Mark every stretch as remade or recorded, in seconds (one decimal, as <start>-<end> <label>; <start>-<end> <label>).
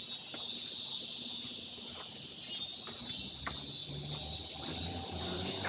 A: 0.0-3.8 recorded; 3.8-5.7 remade